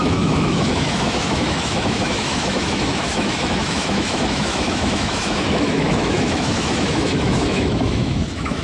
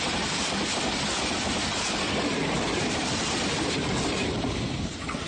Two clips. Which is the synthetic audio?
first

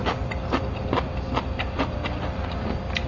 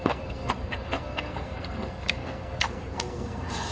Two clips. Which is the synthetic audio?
second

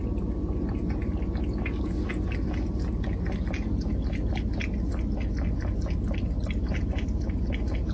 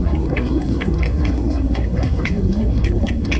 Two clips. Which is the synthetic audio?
second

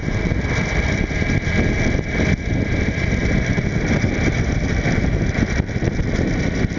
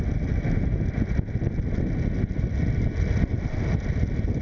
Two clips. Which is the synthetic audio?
first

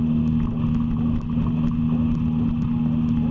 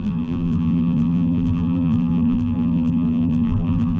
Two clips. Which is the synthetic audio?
second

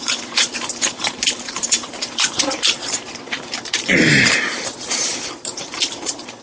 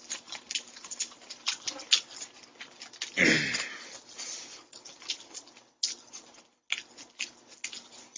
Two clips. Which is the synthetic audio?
first